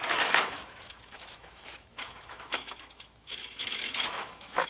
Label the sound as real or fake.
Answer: fake